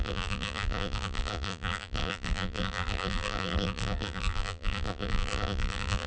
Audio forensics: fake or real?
fake